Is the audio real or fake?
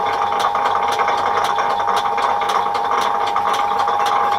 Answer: real